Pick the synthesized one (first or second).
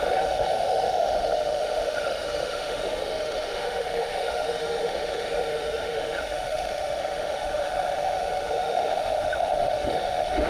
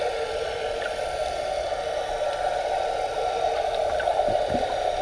first